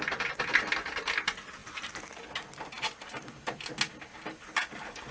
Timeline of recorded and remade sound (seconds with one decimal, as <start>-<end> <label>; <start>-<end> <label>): 0.0-5.1 recorded